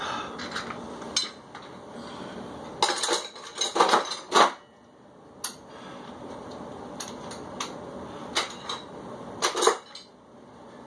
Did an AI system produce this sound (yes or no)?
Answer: no